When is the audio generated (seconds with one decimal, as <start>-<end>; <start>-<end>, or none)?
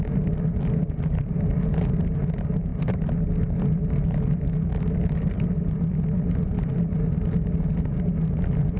none